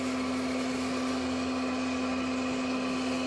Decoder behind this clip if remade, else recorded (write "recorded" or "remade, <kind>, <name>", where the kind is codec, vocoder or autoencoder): recorded